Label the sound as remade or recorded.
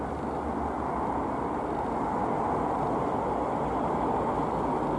recorded